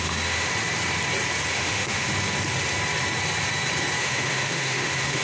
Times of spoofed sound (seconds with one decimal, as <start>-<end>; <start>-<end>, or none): 0.0-0.5; 1.5-2.1; 4.0-5.2